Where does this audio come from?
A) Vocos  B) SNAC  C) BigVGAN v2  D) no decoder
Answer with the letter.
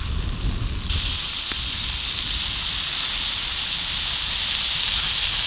D